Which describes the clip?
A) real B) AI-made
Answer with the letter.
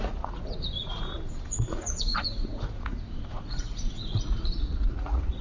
B